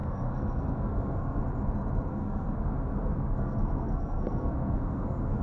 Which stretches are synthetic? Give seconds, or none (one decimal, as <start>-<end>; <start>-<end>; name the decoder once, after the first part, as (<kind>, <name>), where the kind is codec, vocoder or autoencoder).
0.0-1.4 (codec, SNAC); 2.1-5.4